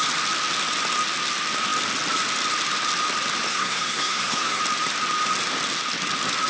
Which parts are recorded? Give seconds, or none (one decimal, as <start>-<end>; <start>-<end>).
0.0-3.5; 4.6-6.5